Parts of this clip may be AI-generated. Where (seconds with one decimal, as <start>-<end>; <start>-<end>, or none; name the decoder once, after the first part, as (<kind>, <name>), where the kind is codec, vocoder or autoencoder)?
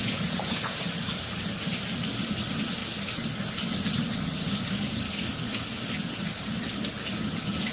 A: 0.0-0.8 (vocoder, Vocos)